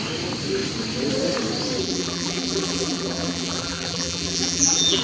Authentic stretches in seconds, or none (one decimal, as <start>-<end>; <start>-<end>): 0.0-1.8